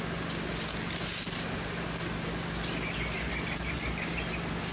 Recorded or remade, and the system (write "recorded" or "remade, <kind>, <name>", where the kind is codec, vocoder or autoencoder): recorded